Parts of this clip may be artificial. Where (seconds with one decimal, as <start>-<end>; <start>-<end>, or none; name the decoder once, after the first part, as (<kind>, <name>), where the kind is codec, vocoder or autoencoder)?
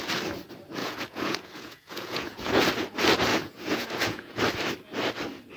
0.8-2.7 (vocoder, Vocos); 3.3-4.4